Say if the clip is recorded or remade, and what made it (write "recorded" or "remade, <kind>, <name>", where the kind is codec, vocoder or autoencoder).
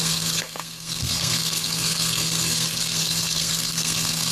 remade, codec, SNAC